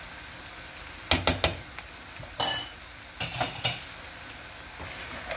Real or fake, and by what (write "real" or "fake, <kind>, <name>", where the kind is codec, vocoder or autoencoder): real